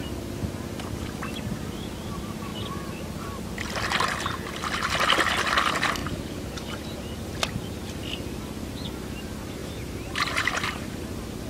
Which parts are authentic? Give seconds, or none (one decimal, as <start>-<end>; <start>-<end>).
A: 0.0-6.0; 7.2-9.6; 11.0-11.5